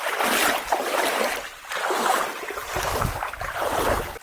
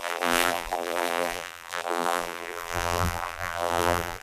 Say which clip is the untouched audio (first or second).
first